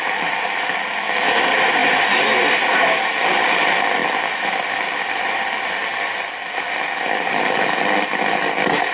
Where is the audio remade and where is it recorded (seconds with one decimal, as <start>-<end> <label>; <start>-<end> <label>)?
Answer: 0.0-8.9 recorded